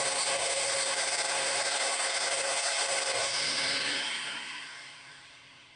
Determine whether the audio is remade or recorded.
remade